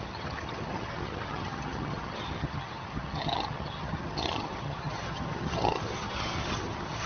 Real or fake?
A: fake